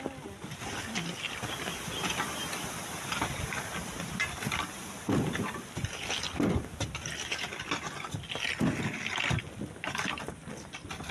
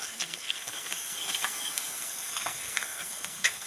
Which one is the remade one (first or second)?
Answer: second